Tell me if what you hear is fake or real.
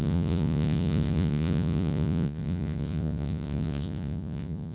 fake